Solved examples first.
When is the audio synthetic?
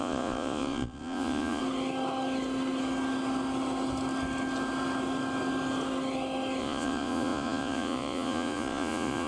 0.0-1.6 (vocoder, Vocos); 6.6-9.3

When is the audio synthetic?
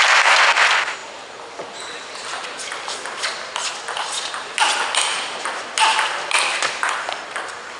none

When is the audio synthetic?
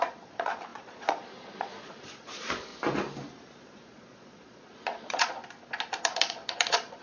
0.0-2.7 (vocoder, Vocos); 3.6-5.4; 6.0-7.0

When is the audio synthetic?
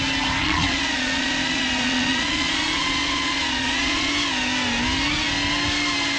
0.4-4.1 (vocoder, Vocos)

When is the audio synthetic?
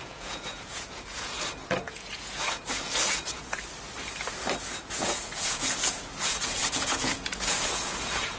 0.0-3.6 (vocoder, Vocos); 4.8-8.4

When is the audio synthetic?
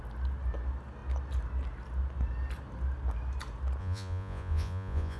3.8-5.2 (vocoder, Vocos)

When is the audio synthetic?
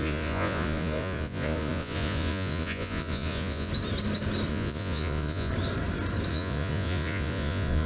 0.0-3.7 (vocoder, Vocos); 4.5-5.5; 6.3-7.9